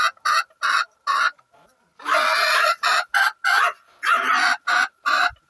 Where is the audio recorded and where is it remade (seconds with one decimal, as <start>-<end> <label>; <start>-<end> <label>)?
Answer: 0.0-5.5 recorded